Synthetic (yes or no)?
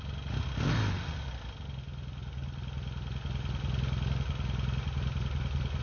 no